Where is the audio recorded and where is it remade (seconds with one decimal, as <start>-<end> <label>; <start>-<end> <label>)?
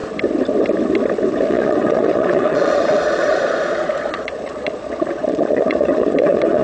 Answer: 0.0-1.5 recorded; 1.5-6.6 remade